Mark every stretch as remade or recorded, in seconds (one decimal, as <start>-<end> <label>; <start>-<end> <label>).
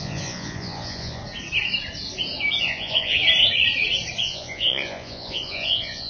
0.0-1.2 remade; 1.2-2.6 recorded; 2.6-3.2 remade; 3.2-4.2 recorded; 4.2-6.1 remade